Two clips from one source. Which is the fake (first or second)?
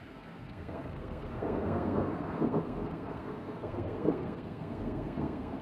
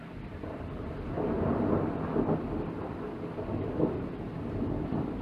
first